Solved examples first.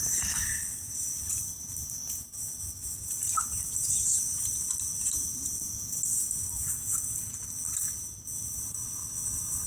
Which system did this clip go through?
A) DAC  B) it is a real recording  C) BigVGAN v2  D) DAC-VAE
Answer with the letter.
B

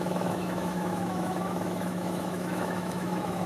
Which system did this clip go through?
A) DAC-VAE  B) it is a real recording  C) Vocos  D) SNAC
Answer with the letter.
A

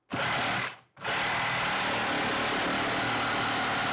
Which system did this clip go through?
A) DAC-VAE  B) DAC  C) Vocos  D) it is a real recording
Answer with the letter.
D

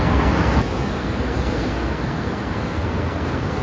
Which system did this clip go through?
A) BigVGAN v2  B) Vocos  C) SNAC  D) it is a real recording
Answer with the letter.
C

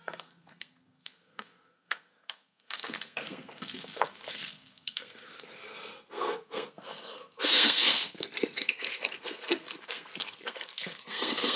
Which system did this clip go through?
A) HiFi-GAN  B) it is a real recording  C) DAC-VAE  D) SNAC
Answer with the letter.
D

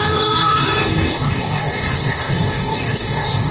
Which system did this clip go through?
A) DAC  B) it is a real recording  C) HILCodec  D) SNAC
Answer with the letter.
A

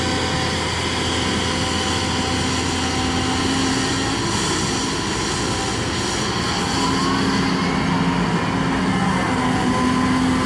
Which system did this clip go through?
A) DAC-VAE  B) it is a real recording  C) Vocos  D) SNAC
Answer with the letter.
B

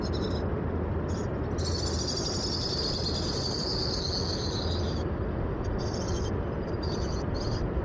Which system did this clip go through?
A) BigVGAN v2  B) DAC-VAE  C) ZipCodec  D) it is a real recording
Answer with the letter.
D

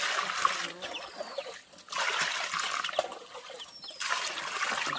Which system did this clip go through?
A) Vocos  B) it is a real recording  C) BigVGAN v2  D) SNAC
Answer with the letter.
B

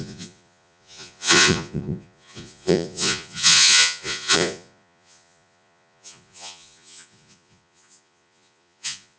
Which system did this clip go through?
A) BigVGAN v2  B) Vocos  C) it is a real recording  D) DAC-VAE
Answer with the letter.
B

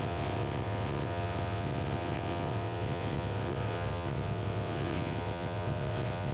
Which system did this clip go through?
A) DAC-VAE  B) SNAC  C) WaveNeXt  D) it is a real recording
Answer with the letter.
C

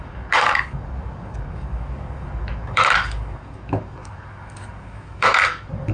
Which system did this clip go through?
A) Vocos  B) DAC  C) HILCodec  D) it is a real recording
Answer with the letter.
B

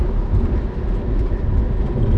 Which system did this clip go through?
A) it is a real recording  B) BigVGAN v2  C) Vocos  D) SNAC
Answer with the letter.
A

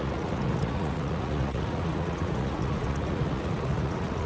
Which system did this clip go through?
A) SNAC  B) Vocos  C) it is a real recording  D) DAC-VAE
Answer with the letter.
B